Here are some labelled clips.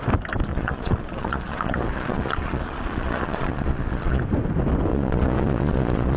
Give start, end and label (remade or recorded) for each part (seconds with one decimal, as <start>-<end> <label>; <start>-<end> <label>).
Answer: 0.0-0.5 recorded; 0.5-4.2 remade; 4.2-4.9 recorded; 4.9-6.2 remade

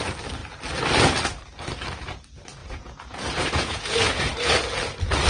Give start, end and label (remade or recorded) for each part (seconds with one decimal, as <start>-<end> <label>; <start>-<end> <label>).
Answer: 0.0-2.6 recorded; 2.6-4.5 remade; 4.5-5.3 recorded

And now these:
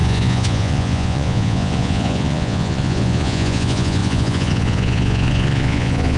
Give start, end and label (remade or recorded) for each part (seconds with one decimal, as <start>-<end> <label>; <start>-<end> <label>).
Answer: 0.0-6.2 remade

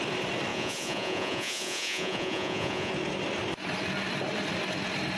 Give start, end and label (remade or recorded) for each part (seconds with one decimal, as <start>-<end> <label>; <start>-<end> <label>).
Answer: 0.0-0.5 recorded; 0.5-2.9 remade; 2.9-5.2 recorded

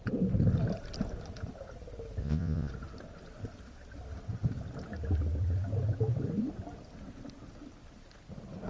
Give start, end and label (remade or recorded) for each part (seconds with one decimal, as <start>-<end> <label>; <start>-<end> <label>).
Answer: 0.0-2.2 recorded; 2.2-2.7 remade; 2.7-8.7 recorded

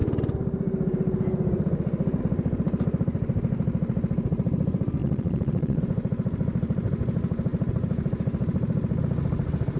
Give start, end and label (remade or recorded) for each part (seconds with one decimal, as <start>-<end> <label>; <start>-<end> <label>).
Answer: 0.0-5.0 recorded; 5.0-5.8 remade; 5.8-9.8 recorded